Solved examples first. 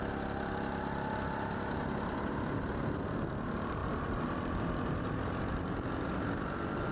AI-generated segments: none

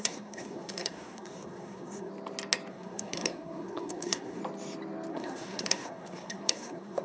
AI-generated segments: 0.0-2.1 (codec, SNAC); 2.7-4.4; 5.1-7.0